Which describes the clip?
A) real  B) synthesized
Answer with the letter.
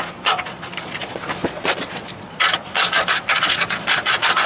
B